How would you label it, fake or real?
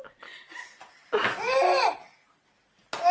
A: real